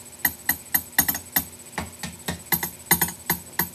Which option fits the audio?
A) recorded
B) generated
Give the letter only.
A